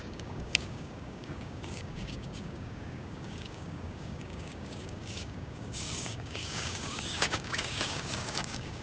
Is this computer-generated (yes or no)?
yes